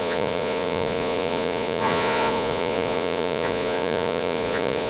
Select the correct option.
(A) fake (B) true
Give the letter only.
A